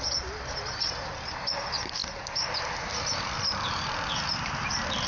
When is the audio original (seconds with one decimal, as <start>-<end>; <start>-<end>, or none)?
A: 0.0-5.1